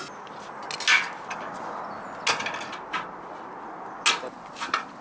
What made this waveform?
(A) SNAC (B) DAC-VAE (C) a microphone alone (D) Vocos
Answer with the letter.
C